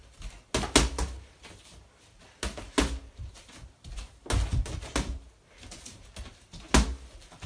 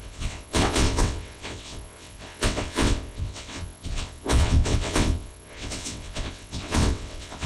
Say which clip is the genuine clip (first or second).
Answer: first